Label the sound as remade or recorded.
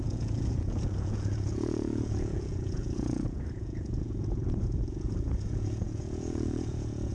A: remade